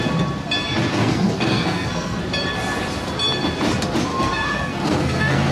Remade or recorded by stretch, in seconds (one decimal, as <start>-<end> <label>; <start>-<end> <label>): 0.0-0.9 recorded; 0.9-2.2 remade; 2.2-4.1 recorded; 4.1-5.5 remade